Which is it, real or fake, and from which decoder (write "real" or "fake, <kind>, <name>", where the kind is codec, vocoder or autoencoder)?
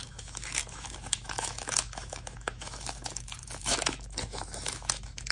fake, autoencoder, DAC-VAE